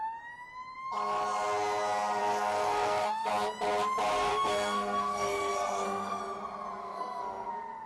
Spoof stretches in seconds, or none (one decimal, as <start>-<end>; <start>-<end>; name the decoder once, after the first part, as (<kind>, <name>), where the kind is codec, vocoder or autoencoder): 2.2-3.3 (codec, SNAC); 4.3-6.2; 6.8-7.5